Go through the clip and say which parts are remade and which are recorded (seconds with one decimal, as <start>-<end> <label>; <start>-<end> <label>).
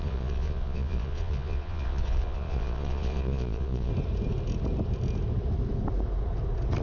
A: 0.0-3.9 remade; 3.9-6.8 recorded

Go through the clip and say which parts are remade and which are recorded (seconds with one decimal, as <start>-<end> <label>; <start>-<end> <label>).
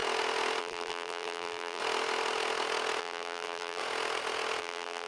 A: 0.0-0.6 recorded; 0.6-1.8 remade; 1.8-3.0 recorded; 3.0-3.8 remade; 3.8-4.6 recorded; 4.6-5.1 remade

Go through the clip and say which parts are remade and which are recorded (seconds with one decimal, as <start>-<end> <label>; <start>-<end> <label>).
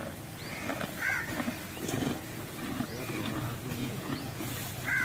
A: 0.0-3.8 recorded; 3.8-4.5 remade; 4.5-5.0 recorded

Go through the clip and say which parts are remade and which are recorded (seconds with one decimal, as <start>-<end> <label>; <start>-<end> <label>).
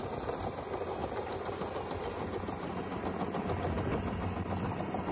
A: 0.0-5.1 recorded